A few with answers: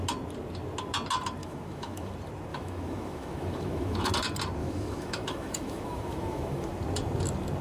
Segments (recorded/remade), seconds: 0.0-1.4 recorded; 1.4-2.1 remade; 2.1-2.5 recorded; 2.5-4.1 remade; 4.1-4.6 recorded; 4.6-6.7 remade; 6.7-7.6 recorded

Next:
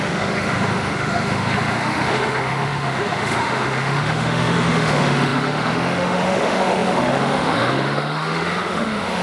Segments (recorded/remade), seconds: 0.0-9.2 remade

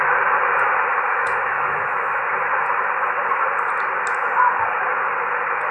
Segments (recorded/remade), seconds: 0.0-0.9 recorded; 0.9-2.2 remade; 2.2-5.7 recorded